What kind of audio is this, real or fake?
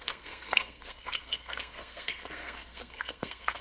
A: fake